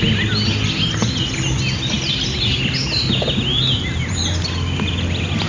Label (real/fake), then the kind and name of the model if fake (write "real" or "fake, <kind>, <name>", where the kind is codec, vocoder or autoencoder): real